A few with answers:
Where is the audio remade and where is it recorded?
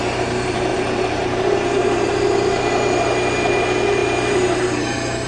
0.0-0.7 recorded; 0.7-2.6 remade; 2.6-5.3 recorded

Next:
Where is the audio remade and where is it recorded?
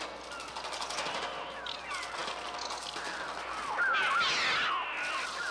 0.0-5.5 recorded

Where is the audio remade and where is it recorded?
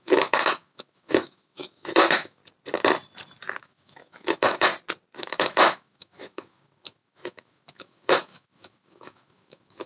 0.0-2.4 remade; 2.4-3.6 recorded; 3.6-4.7 remade; 4.7-5.2 recorded; 5.2-9.9 remade